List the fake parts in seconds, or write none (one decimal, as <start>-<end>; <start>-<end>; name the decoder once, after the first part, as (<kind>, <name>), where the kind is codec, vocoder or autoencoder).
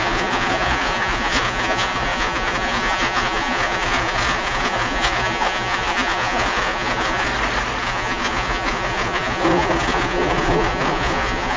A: 0.0-7.3 (vocoder, Vocos); 7.8-11.6